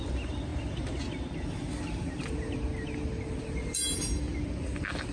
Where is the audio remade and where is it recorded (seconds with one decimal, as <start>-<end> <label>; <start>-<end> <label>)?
0.0-5.1 recorded